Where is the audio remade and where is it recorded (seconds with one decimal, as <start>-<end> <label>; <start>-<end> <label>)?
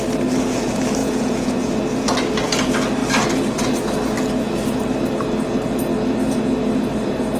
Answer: 0.0-1.0 recorded; 1.0-1.7 remade; 1.7-7.4 recorded